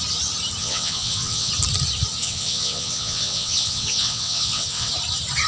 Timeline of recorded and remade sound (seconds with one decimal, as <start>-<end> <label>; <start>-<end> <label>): 0.0-0.6 recorded; 0.6-1.5 remade; 1.5-2.2 recorded; 2.2-4.9 remade; 4.9-5.5 recorded